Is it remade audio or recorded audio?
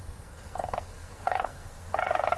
remade